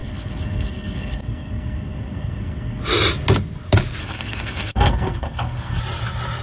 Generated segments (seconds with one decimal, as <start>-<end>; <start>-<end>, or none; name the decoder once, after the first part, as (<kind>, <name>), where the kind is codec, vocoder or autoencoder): 0.0-2.8 (codec, SNAC); 4.0-5.8